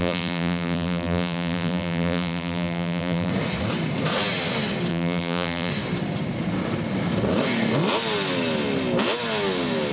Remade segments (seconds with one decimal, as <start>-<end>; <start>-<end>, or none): 0.0-3.3; 4.9-5.7